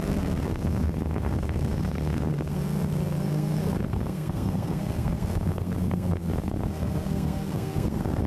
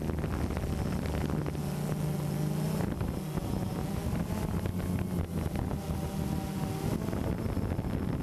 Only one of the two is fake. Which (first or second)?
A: first